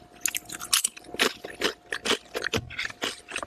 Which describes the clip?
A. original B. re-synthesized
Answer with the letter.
A